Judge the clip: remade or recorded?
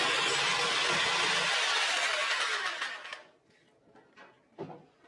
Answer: recorded